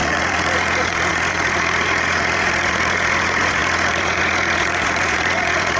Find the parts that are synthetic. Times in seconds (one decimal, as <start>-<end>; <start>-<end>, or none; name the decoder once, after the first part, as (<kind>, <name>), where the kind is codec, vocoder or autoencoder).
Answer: 0.0-5.8 (vocoder, Vocos)